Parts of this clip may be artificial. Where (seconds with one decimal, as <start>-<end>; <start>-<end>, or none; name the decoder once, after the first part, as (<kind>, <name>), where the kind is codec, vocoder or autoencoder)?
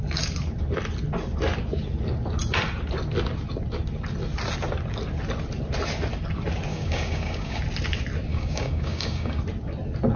6.7-7.6 (codec, DAC); 8.3-9.4